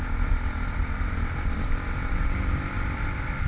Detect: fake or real real